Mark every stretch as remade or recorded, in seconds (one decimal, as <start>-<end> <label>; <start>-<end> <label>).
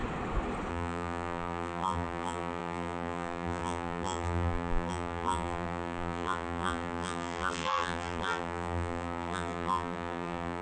0.0-0.7 recorded; 0.7-10.6 remade